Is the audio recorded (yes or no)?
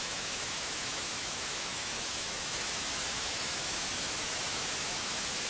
no